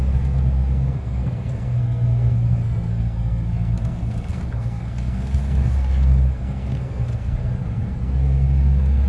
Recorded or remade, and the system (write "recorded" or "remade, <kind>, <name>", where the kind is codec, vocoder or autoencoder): remade, codec, SNAC